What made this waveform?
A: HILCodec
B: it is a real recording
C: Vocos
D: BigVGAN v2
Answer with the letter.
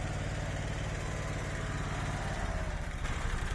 D